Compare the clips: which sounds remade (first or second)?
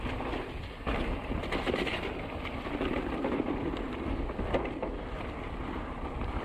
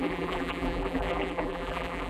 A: second